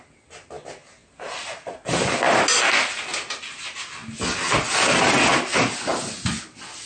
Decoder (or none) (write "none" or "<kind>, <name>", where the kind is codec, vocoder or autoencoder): none